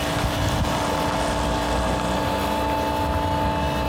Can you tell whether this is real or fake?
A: real